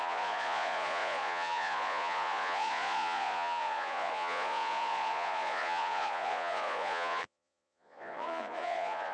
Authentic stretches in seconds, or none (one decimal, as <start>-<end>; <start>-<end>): none